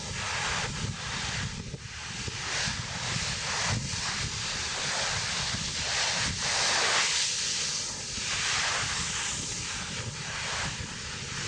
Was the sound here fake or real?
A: real